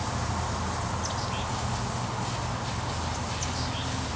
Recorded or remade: recorded